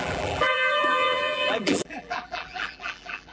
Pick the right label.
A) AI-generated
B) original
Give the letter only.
A